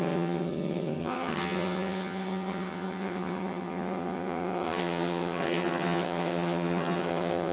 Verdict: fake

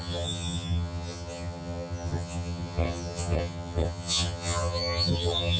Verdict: fake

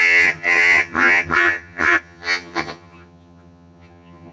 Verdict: fake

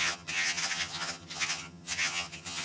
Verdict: fake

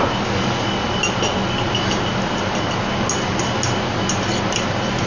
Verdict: real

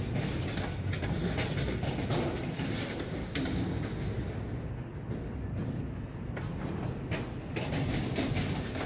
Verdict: real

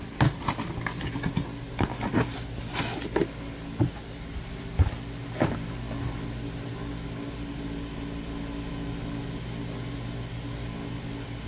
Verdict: real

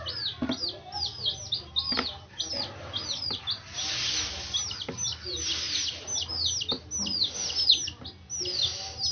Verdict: real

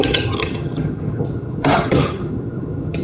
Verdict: fake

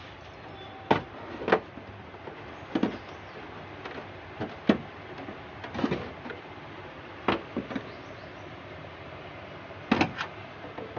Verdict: real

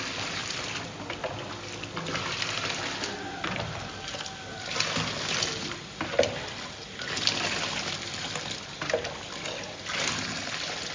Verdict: real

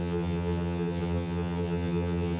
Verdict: fake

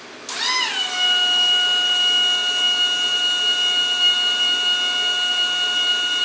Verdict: real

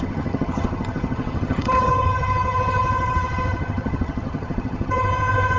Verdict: fake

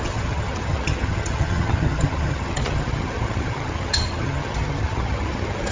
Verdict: fake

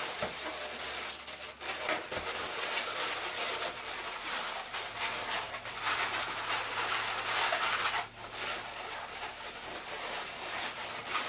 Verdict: real